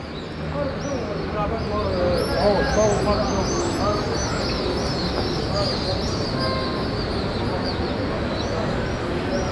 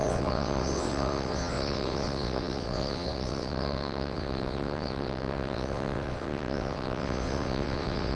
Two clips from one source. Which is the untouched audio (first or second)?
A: first